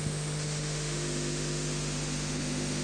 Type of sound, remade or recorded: remade